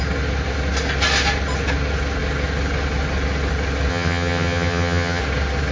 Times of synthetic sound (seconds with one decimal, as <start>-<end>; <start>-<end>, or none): 3.9-5.2